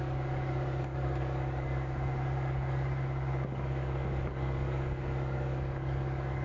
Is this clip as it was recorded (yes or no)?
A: no